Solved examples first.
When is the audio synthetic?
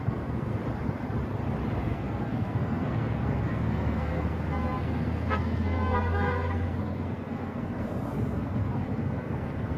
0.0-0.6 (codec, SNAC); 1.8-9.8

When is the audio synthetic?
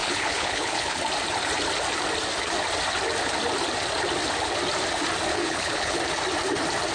0.0-1.0 (codec, HILCodec); 5.3-6.0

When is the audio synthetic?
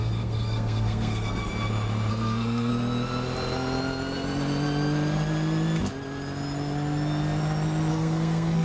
0.0-1.4 (codec, SNAC); 2.1-2.7; 7.9-8.6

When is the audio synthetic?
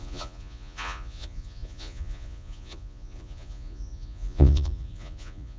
0.0-5.6 (vocoder, Vocos)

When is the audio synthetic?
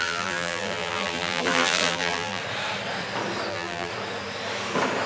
0.0-2.4 (vocoder, BigVGAN v2); 3.5-3.9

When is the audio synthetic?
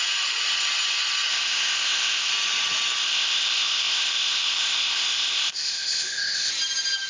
1.3-2.3 (codec, ZipCodec); 3.0-6.5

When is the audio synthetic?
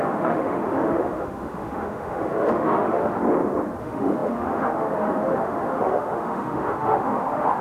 0.0-3.2 (autoencoder, DAC-VAE); 3.8-7.6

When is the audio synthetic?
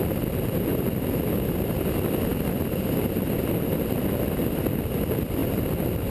none